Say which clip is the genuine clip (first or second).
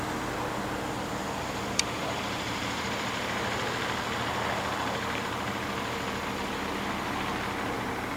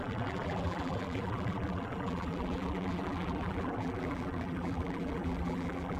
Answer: first